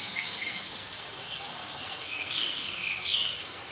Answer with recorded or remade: remade